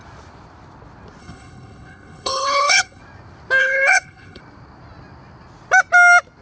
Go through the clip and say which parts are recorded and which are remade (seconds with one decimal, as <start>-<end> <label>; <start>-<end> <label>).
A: 0.0-1.2 recorded; 1.2-3.0 remade; 3.0-3.6 recorded; 3.6-4.4 remade; 4.4-6.4 recorded